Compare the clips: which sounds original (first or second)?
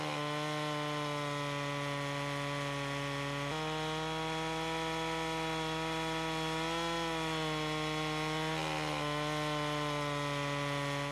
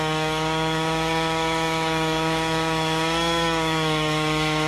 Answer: first